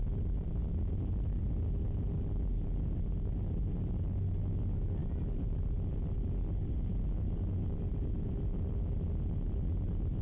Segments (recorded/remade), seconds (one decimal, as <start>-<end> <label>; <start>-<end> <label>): 0.0-10.2 recorded

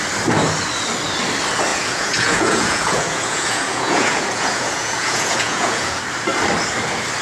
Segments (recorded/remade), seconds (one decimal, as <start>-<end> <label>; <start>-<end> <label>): 0.0-1.7 recorded; 1.7-6.0 remade; 6.0-7.2 recorded

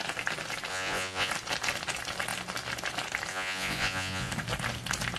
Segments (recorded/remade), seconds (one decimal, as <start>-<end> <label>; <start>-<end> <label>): 0.0-0.7 recorded; 0.7-1.3 remade; 1.3-3.3 recorded; 3.3-4.3 remade; 4.3-5.2 recorded